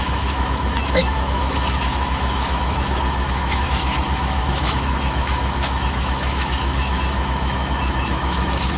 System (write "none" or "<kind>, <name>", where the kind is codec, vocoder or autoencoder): autoencoder, DAC-VAE